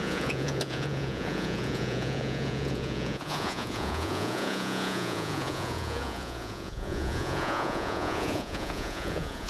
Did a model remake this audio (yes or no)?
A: yes